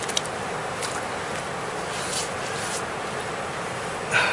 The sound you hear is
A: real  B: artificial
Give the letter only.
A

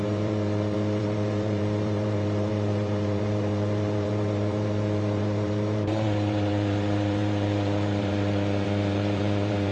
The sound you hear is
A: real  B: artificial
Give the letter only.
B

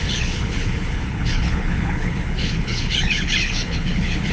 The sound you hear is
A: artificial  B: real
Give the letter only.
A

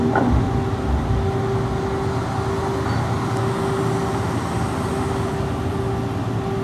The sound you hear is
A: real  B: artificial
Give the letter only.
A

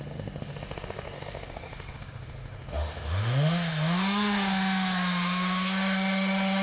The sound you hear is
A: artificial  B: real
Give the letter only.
A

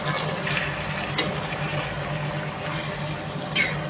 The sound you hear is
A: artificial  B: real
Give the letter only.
B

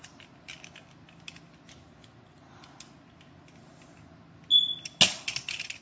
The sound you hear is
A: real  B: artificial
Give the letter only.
A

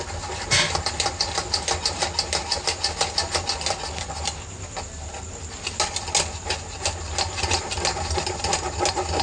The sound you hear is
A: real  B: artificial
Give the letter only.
A